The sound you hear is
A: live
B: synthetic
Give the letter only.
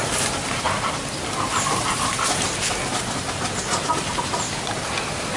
A